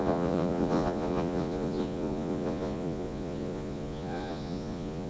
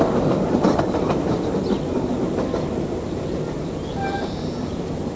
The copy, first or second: first